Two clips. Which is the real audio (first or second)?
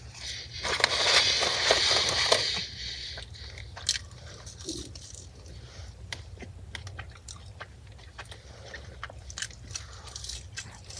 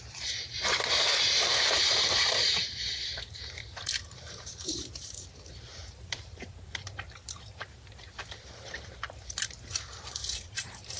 first